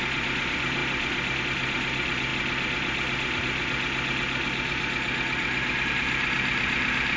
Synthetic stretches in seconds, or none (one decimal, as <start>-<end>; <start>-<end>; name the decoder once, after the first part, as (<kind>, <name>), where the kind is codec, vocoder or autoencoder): none